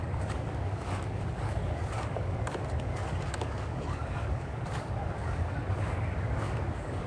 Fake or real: fake